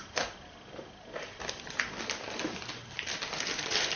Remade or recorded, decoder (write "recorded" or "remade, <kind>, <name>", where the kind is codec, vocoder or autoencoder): recorded